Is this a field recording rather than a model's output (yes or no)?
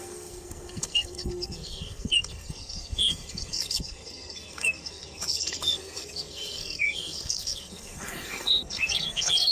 no